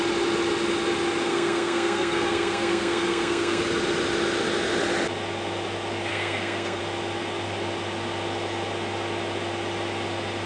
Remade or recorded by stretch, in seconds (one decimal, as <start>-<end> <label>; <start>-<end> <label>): 0.0-1.3 recorded; 1.3-3.6 remade; 3.6-6.1 recorded; 6.1-6.8 remade; 6.8-10.5 recorded